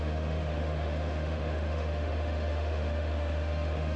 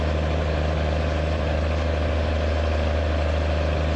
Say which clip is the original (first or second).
second